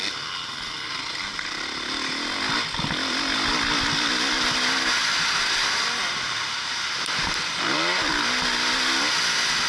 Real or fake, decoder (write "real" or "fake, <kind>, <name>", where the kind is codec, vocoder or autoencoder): real